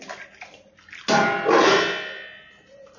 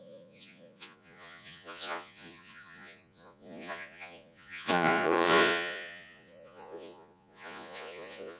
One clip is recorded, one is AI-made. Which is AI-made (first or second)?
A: second